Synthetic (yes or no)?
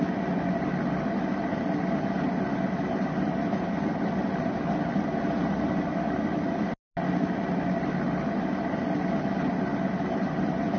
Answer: no